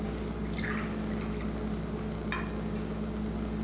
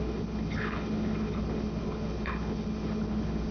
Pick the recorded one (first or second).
first